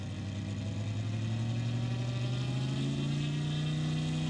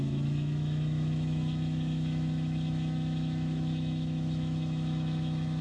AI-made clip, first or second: second